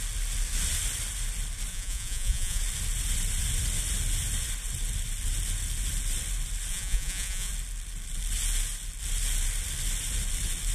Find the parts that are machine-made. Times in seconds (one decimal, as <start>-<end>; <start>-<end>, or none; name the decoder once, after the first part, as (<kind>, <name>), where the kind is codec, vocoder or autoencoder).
1.7-2.6 (vocoder, Vocos); 6.7-7.5